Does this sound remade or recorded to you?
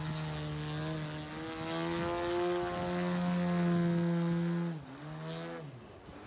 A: recorded